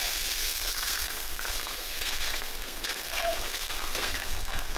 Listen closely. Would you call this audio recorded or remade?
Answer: remade